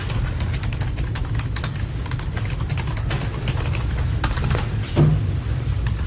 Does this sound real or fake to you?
real